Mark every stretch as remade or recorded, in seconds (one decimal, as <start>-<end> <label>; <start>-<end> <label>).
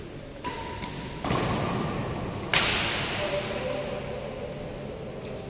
0.0-5.5 recorded